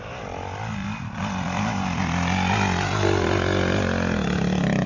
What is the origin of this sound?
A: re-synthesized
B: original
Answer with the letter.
B